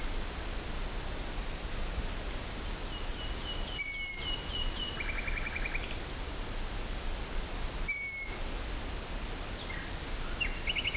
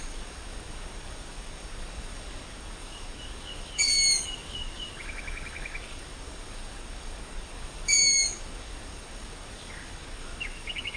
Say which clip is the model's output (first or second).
second